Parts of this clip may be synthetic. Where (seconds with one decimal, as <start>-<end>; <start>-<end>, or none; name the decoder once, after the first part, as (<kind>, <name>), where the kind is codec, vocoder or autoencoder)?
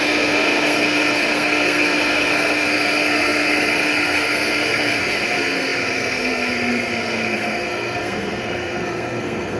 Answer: 0.0-9.6 (codec, SNAC)